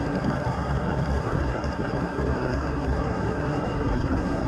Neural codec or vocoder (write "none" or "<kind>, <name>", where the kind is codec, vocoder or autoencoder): codec, SNAC